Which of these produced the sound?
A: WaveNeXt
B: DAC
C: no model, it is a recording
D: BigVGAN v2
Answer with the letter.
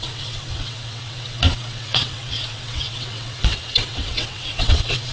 A